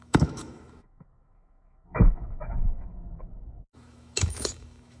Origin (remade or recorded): remade